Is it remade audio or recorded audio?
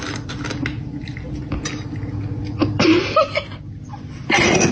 recorded